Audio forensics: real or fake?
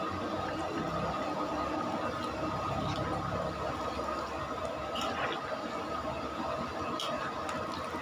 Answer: real